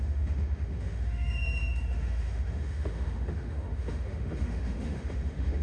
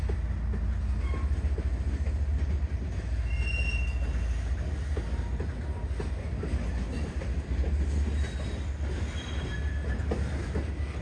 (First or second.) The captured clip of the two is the second